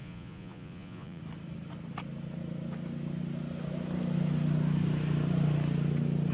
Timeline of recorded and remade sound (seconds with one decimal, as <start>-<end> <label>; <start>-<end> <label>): 0.0-1.2 remade; 1.2-6.3 recorded